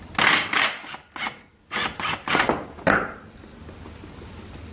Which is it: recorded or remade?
recorded